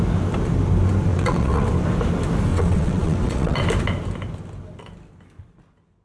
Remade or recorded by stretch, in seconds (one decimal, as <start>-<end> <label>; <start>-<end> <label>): 0.0-1.1 recorded; 1.1-1.7 remade; 1.7-2.5 recorded; 2.5-3.6 remade; 3.6-6.0 recorded